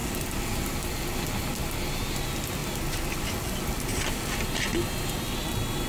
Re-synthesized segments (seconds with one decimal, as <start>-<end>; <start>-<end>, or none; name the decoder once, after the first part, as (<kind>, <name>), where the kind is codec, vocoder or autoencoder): 0.0-1.6 (vocoder, BigVGAN v2); 3.9-4.7